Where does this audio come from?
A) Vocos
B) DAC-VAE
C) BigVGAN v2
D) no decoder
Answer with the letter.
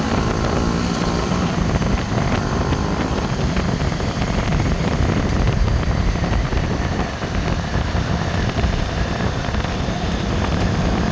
D